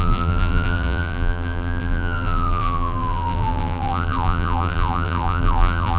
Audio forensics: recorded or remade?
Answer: remade